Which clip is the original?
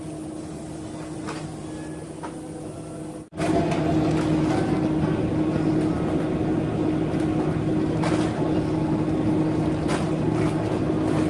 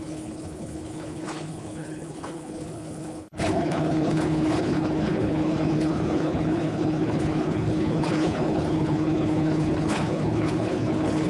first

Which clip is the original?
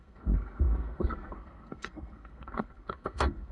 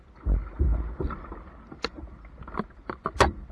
second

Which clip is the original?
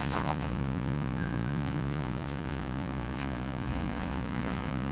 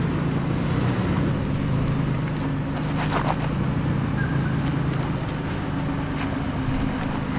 second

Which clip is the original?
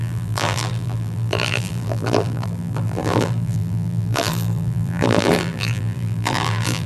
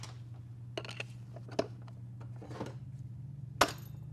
second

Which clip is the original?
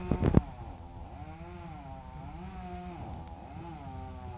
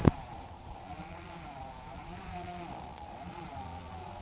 first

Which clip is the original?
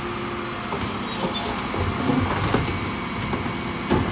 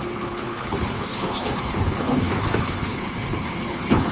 first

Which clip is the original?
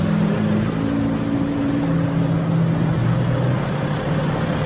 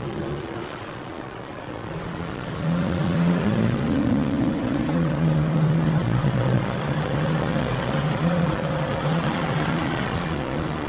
first